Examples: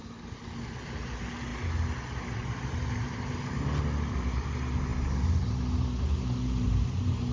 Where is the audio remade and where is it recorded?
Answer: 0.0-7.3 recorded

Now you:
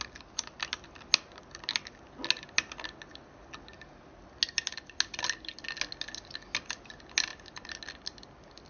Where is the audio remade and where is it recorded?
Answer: 0.0-8.7 recorded

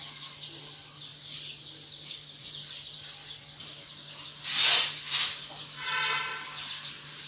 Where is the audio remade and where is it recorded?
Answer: 0.0-7.3 recorded

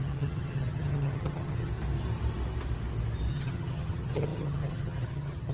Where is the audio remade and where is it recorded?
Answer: 0.0-1.7 remade; 1.7-3.3 recorded; 3.3-5.5 remade

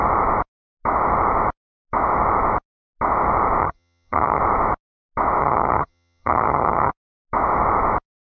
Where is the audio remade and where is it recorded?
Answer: 0.0-3.6 recorded; 3.6-4.4 remade; 4.4-5.4 recorded; 5.4-6.9 remade; 6.9-8.3 recorded